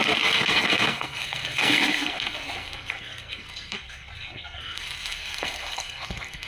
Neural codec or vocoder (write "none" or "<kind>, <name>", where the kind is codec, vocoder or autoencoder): codec, SNAC